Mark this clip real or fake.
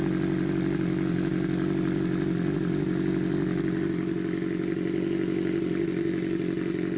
real